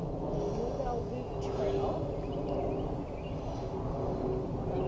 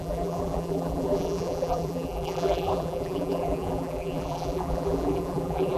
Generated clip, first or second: second